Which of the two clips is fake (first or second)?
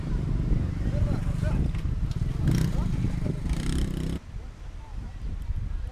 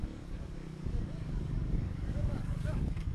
second